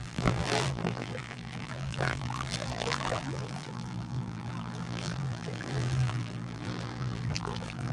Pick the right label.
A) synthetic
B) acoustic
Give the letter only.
A